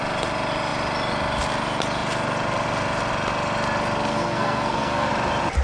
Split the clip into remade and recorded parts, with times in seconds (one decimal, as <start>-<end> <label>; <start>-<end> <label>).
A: 0.0-4.1 recorded; 4.1-5.1 remade; 5.1-5.6 recorded